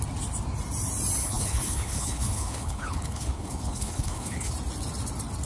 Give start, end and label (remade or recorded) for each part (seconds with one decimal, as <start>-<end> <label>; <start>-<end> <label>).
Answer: 0.0-1.2 recorded; 1.2-4.5 remade; 4.5-5.5 recorded